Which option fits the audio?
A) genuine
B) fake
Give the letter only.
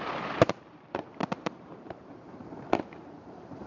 B